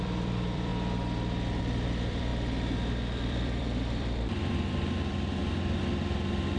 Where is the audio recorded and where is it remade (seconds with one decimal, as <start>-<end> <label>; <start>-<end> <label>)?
0.0-0.7 remade; 0.7-1.6 recorded; 1.6-5.4 remade; 5.4-6.6 recorded